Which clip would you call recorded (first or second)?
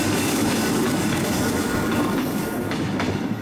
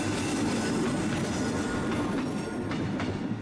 second